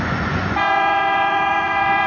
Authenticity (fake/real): fake